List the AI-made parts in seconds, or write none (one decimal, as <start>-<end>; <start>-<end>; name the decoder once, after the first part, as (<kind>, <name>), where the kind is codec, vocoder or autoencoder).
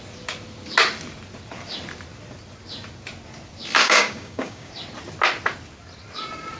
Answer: 3.8-4.7 (codec, DAC)